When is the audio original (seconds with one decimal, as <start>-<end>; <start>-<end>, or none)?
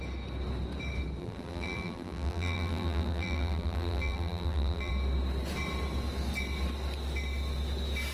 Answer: 0.0-1.2; 4.9-8.1